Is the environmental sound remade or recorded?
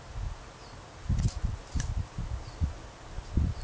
recorded